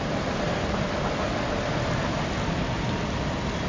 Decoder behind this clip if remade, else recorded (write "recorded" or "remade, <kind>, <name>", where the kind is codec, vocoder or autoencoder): recorded